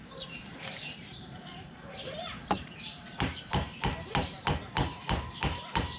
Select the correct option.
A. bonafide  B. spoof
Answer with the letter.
B